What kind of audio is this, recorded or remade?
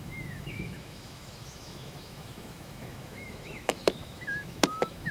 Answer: remade